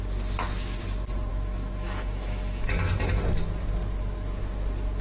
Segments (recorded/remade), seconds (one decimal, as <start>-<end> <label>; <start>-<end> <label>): 0.0-1.3 recorded; 1.3-3.2 remade; 3.2-5.0 recorded